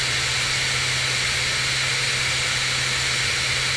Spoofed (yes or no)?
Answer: no